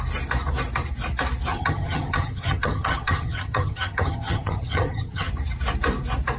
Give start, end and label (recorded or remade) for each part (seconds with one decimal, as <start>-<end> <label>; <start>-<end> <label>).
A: 0.0-1.5 recorded; 1.5-5.3 remade; 5.3-6.4 recorded